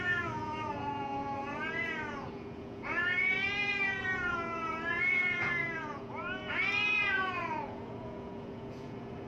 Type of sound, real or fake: fake